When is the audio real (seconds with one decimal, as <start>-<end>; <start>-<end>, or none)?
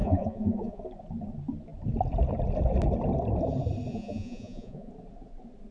0.8-3.9; 4.9-5.7